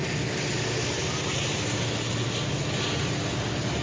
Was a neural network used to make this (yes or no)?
no